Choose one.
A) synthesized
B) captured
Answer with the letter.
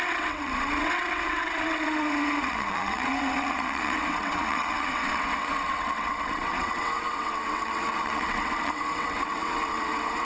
A